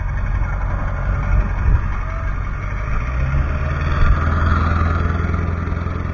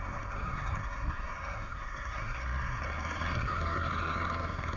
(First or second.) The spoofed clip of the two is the second